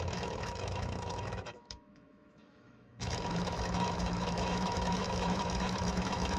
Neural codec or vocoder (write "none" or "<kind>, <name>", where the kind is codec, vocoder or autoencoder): autoencoder, DAC-VAE